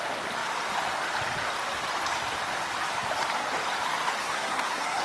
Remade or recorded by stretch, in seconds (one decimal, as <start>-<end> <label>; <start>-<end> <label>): 0.0-4.2 recorded; 4.2-5.0 remade